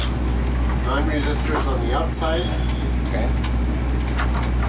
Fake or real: real